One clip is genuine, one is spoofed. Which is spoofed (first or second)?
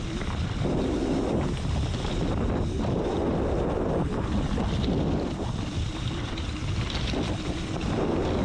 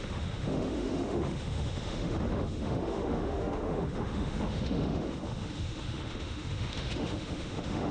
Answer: second